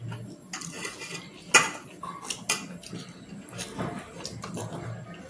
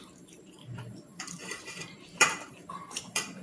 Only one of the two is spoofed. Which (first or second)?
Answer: second